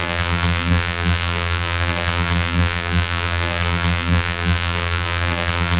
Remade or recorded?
remade